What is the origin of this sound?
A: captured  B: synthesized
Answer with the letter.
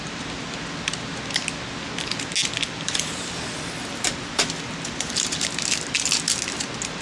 A